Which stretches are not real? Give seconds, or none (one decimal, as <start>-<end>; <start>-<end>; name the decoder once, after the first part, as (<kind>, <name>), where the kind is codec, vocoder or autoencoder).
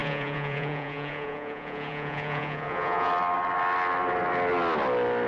0.0-3.1 (vocoder, Vocos)